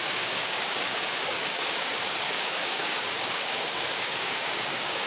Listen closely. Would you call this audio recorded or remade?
remade